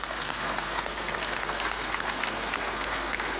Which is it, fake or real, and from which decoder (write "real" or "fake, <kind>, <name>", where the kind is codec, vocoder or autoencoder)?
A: fake, codec, SNAC